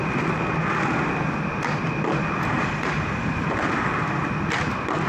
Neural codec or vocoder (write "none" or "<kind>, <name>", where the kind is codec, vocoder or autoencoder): none